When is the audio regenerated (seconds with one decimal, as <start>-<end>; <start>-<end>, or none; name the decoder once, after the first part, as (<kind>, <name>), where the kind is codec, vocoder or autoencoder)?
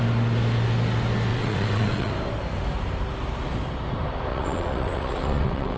1.3-2.1 (vocoder, WaveNeXt); 4.3-5.8